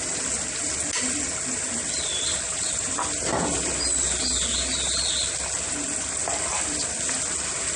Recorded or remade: recorded